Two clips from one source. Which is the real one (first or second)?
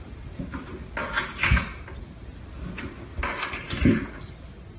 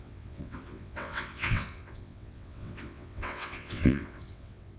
first